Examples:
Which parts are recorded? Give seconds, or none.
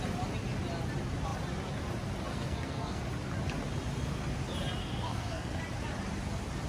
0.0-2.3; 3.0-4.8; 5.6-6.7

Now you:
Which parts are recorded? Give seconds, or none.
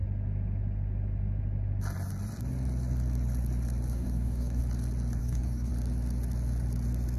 0.0-3.9; 4.6-5.2; 5.7-7.2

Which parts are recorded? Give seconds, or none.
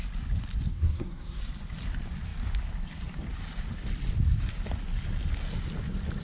0.0-0.7; 1.4-6.2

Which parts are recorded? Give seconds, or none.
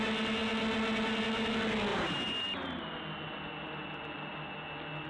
0.0-1.9; 2.8-5.1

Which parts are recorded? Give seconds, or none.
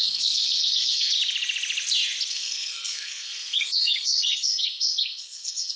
1.1-2.3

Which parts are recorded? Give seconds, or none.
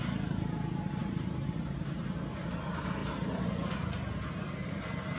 3.0-5.2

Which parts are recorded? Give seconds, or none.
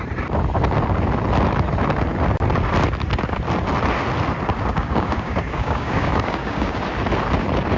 0.0-4.7; 6.8-7.8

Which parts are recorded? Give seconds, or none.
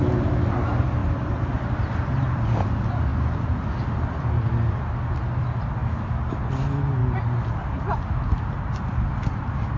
0.0-5.8; 6.4-9.8